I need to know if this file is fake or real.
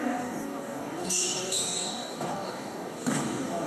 fake